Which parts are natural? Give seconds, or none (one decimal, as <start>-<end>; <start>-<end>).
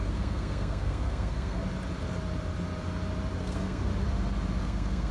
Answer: 1.6-3.4; 3.9-4.6